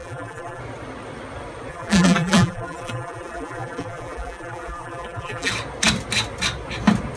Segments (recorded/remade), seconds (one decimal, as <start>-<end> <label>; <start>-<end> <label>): 0.0-0.6 remade; 0.6-1.7 recorded; 1.7-5.5 remade; 5.5-7.2 recorded